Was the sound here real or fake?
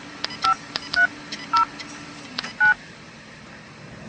real